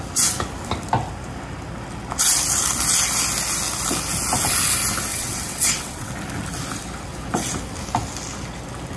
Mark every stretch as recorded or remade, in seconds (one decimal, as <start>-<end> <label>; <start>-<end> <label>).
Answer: 0.0-5.1 recorded; 5.1-6.1 remade; 6.1-9.0 recorded